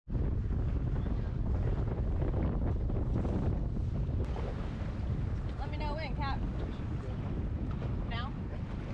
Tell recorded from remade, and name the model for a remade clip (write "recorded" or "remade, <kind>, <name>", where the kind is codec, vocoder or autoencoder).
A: recorded